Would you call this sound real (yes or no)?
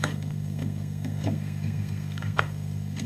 no